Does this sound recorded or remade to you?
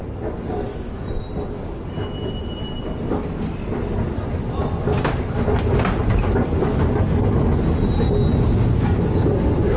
recorded